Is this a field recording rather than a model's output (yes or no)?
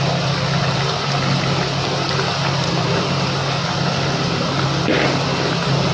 yes